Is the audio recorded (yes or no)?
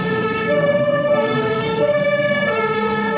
no